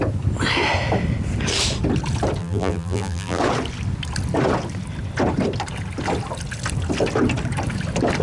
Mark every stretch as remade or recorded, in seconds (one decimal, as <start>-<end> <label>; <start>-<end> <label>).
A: 0.0-2.4 recorded; 2.4-3.4 remade; 3.4-8.2 recorded